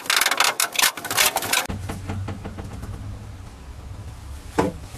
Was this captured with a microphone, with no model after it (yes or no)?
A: yes